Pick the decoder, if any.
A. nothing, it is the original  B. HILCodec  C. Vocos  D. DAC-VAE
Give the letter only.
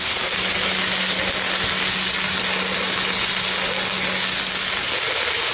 A